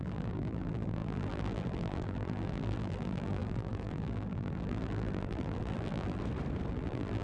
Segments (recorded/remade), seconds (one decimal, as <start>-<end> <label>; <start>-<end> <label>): 0.0-6.2 remade; 6.2-6.7 recorded; 6.7-7.2 remade